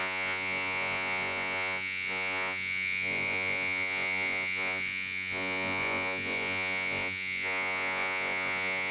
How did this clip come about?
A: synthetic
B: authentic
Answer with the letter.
A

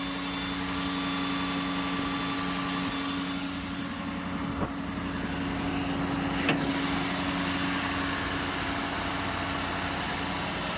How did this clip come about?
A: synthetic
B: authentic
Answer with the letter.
B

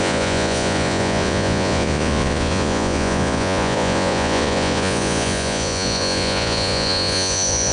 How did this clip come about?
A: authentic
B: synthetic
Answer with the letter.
B